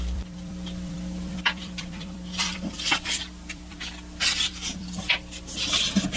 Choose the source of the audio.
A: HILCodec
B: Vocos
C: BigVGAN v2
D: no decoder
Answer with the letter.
C